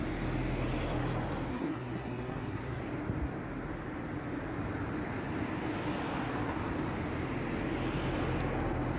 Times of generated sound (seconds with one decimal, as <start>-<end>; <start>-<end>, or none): 1.5-2.8